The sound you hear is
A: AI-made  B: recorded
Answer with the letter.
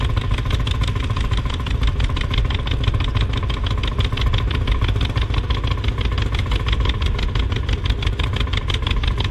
B